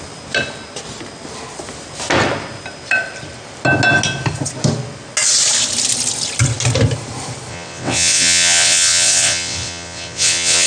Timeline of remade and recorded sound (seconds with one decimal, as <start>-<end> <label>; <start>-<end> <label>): 0.0-7.5 recorded; 7.5-10.7 remade